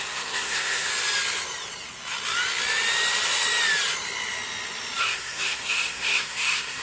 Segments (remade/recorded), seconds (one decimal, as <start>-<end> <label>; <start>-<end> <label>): 0.0-0.9 remade; 0.9-5.0 recorded; 5.0-6.8 remade